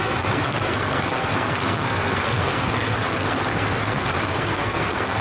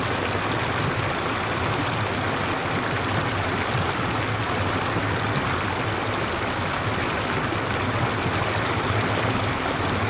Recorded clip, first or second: second